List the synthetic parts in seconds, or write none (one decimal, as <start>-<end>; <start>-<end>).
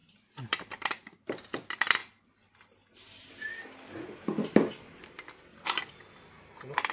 0.0-0.7